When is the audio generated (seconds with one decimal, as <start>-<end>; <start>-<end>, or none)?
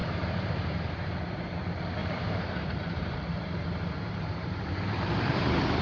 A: 0.0-1.5; 2.0-5.8